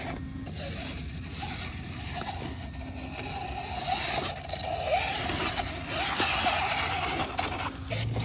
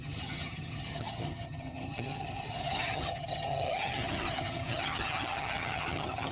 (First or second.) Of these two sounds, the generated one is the second